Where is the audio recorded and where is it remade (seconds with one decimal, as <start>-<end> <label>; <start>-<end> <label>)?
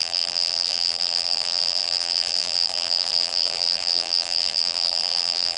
0.0-5.6 remade